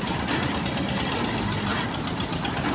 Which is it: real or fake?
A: real